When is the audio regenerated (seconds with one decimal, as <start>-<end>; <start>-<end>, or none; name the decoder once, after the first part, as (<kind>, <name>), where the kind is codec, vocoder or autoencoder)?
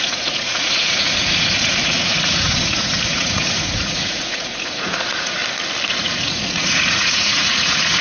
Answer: 0.0-5.4 (vocoder, Vocos); 5.9-8.0